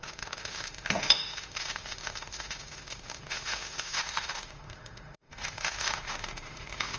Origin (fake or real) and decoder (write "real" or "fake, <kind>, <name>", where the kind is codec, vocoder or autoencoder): fake, autoencoder, DAC-VAE